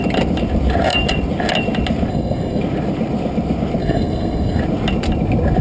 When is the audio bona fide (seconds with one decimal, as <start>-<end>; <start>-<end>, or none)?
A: 0.0-2.1; 2.6-3.8; 4.6-5.6